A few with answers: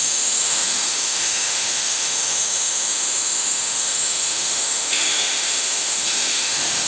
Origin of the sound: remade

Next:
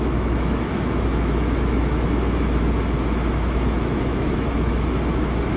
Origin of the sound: remade